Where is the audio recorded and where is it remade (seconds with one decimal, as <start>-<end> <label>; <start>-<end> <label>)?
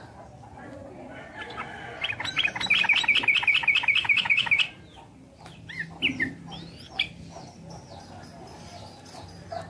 0.0-4.0 recorded; 4.0-4.6 remade; 4.6-9.7 recorded